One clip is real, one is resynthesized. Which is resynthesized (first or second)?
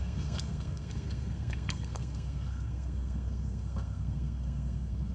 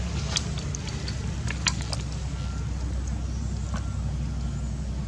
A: first